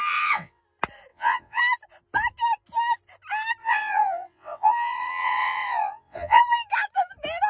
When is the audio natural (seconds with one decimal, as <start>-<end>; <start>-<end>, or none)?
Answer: 0.6-1.1; 1.6-3.6; 6.4-7.5